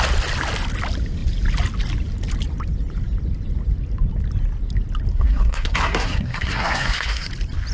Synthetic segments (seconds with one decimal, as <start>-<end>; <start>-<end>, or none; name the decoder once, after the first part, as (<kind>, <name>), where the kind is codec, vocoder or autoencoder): 5.1-7.3 (codec, SNAC)